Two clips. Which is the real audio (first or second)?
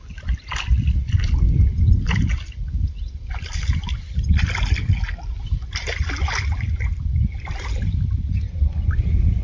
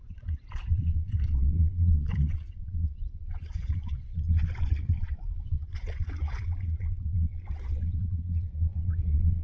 first